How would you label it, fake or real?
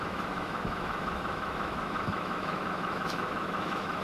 fake